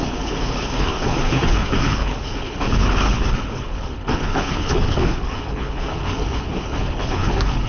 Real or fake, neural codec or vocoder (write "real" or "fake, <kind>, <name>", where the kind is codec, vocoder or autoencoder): fake, codec, HILCodec